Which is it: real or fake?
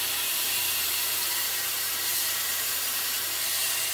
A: fake